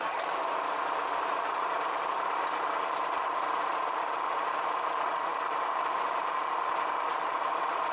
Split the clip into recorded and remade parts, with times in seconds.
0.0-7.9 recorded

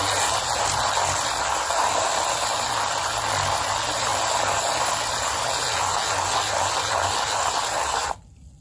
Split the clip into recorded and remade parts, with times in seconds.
0.0-8.6 recorded